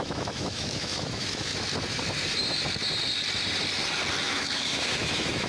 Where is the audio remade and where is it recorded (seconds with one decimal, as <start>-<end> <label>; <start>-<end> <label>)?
0.0-1.5 remade; 1.5-4.2 recorded; 4.2-5.5 remade